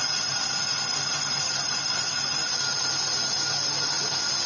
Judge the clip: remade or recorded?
recorded